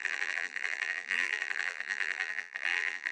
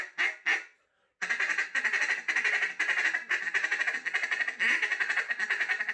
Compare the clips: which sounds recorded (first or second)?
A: second